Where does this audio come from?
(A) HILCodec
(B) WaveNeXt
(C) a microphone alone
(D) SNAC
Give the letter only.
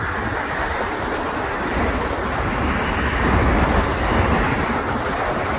C